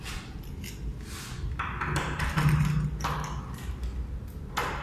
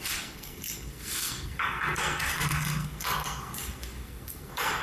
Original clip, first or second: first